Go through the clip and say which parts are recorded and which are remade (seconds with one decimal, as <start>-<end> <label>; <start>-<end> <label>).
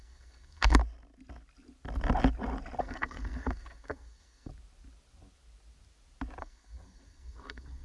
0.0-0.8 remade; 0.8-2.8 recorded; 2.8-4.5 remade; 4.5-6.4 recorded; 6.4-7.8 remade